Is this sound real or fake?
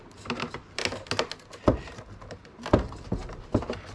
real